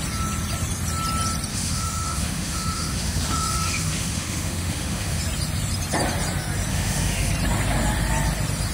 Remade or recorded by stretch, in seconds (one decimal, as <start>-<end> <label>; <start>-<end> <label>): 0.0-1.5 recorded; 1.5-5.2 remade; 5.2-6.7 recorded; 6.7-7.3 remade; 7.3-8.7 recorded